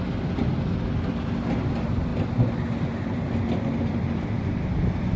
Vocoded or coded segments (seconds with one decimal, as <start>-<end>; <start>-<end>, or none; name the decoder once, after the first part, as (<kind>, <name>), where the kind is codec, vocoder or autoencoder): none